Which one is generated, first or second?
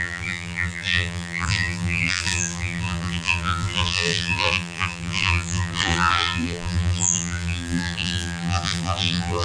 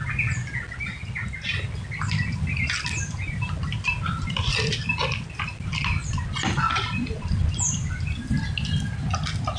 first